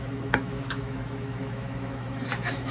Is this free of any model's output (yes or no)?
no